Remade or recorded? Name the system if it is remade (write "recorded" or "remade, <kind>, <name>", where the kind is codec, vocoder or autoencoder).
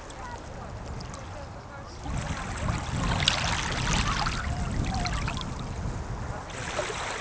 recorded